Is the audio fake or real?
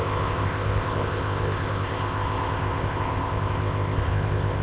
fake